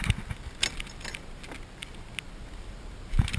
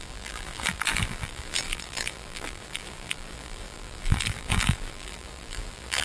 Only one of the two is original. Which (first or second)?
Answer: first